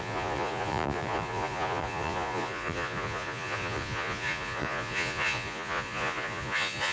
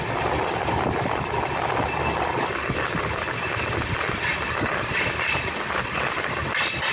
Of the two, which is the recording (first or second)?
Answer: second